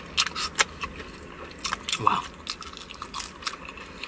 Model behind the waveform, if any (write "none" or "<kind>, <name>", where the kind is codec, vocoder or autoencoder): none